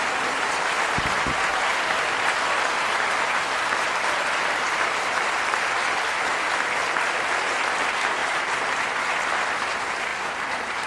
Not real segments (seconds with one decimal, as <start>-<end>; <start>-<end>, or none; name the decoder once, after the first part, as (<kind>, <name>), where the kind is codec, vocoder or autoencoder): 1.5-6.5 (vocoder, BigVGAN v2); 8.2-9.0; 10.1-10.9